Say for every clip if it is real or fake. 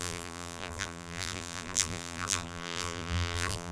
fake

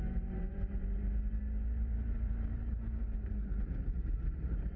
fake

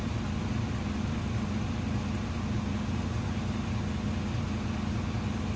real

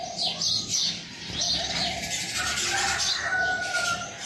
real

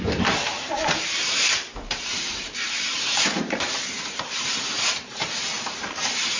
fake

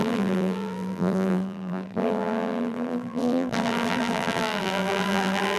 fake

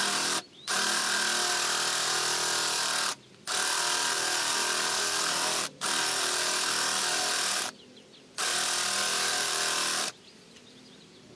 real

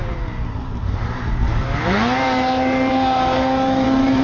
fake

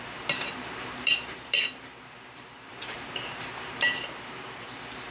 fake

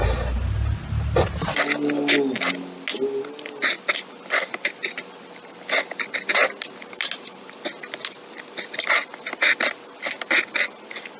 real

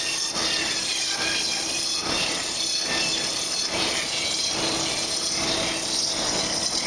real